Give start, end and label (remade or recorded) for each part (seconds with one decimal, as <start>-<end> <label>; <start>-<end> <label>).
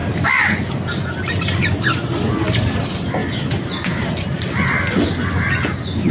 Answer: 0.0-6.1 recorded